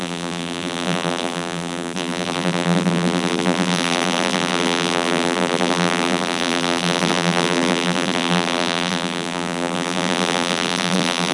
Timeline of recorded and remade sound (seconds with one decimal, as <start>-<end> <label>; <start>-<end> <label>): 0.0-11.3 remade